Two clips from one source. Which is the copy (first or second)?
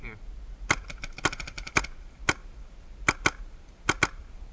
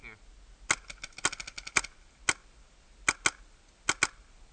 first